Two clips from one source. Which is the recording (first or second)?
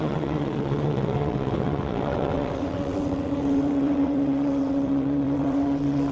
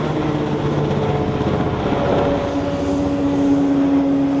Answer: second